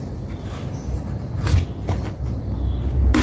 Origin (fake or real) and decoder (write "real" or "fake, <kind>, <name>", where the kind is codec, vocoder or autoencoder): real